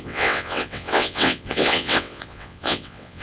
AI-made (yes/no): yes